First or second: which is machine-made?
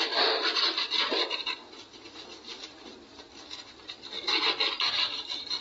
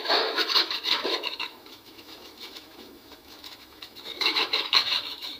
second